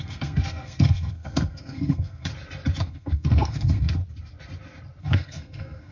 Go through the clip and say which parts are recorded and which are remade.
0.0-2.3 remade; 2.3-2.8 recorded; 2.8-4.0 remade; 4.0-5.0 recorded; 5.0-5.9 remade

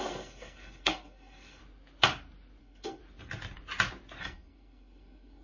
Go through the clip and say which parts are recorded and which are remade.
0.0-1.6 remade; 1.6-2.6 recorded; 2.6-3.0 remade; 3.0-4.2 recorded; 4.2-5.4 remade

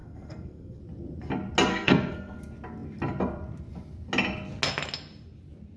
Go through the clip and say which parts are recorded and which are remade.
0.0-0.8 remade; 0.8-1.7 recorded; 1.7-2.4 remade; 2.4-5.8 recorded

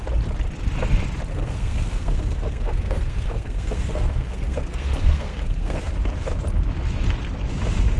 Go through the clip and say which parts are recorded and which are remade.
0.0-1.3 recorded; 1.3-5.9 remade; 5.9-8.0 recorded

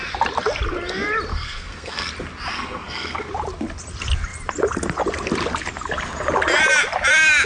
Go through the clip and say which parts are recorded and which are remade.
0.0-1.3 recorded; 1.3-2.1 remade; 2.1-2.5 recorded; 2.5-3.3 remade; 3.3-7.5 recorded

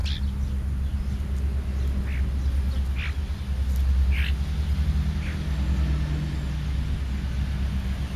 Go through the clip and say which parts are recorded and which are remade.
0.0-8.2 recorded